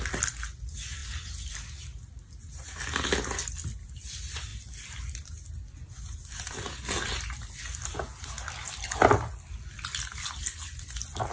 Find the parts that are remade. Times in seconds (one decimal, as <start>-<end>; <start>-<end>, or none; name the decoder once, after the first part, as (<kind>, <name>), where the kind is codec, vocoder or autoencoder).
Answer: none